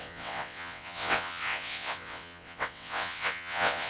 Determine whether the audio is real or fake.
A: fake